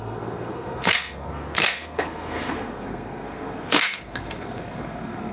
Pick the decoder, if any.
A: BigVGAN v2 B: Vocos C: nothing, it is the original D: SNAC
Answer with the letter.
D